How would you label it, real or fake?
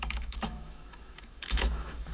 fake